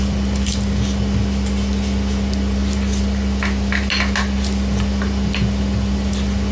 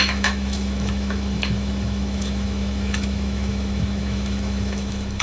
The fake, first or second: second